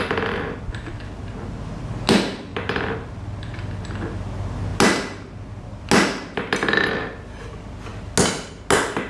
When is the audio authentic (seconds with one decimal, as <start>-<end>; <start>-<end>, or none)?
0.0-9.1